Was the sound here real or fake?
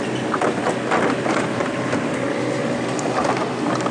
real